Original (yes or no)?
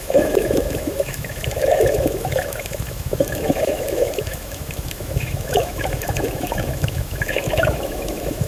no